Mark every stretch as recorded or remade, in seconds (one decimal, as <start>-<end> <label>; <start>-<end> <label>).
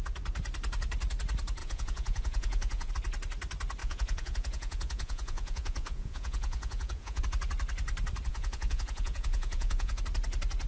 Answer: 0.0-1.6 recorded; 1.6-2.9 remade; 2.9-3.8 recorded; 3.8-7.2 remade; 7.2-8.3 recorded; 8.3-10.0 remade; 10.0-10.7 recorded